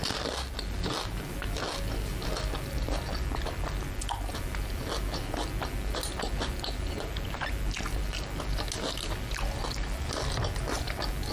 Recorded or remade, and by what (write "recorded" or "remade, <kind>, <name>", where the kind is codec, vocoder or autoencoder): recorded